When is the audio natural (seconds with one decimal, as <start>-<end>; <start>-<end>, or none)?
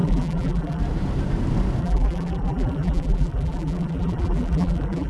0.8-1.8